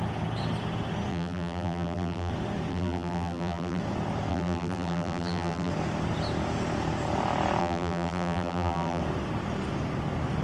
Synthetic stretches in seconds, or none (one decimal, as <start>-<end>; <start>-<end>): 1.1-2.3; 2.7-3.8; 4.3-5.7; 7.6-9.0